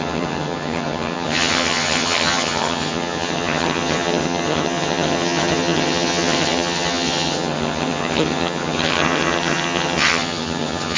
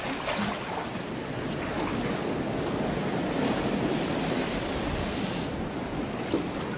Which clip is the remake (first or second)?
first